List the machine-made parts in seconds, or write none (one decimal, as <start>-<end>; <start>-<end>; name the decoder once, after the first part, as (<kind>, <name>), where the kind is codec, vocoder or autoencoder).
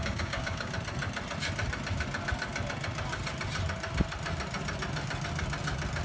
0.0-0.7 (codec, DAC)